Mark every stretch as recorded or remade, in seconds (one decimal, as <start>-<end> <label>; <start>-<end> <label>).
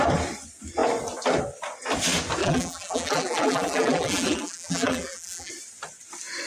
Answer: 0.0-2.4 recorded; 2.4-5.5 remade; 5.5-6.5 recorded